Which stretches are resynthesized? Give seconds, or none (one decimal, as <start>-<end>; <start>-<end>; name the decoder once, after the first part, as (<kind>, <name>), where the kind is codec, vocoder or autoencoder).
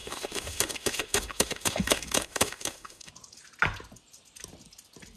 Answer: 0.0-3.1 (autoencoder, DAC-VAE)